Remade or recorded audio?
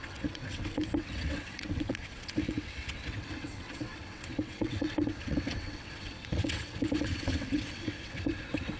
remade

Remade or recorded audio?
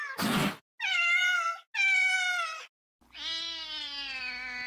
recorded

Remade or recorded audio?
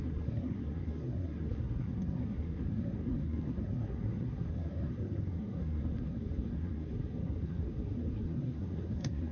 remade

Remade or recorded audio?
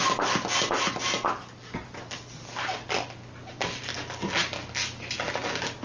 recorded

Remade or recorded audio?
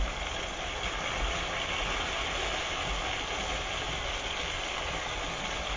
recorded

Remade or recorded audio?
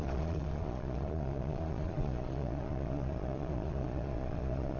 remade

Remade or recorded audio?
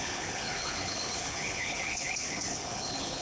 remade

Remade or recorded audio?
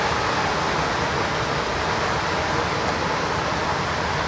recorded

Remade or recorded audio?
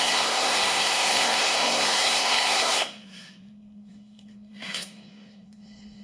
remade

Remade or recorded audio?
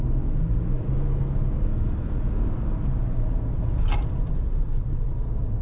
recorded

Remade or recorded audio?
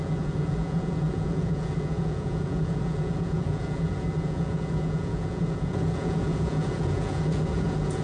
remade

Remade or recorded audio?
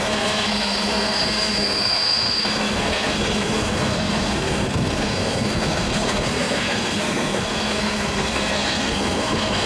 remade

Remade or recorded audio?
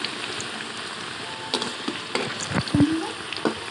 recorded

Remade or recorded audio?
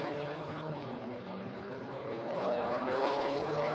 remade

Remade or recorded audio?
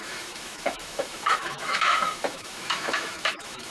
remade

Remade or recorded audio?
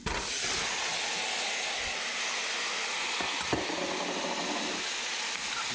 recorded